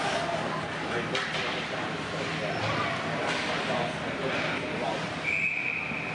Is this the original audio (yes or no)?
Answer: yes